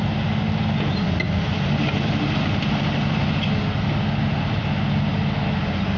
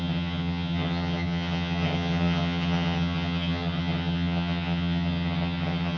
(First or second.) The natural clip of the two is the first